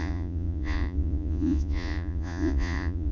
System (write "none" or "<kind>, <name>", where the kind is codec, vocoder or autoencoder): vocoder, Vocos